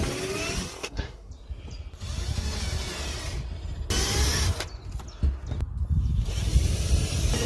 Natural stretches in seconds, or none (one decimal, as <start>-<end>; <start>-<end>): 0.0-0.8; 1.3-7.5